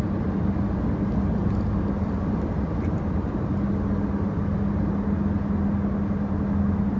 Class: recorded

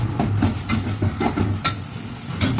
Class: recorded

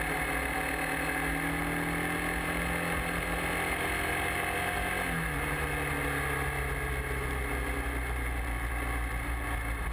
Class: recorded